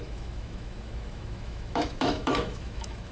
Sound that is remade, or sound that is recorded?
remade